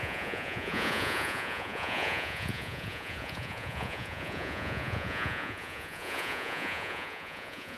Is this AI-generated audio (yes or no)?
yes